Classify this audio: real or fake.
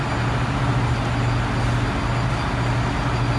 real